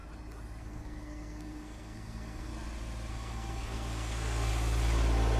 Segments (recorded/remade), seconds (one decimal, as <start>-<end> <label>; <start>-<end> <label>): 0.0-0.6 recorded; 0.6-2.5 remade; 2.5-3.1 recorded; 3.1-4.5 remade; 4.5-5.4 recorded